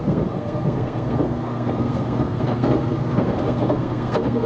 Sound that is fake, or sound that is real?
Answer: fake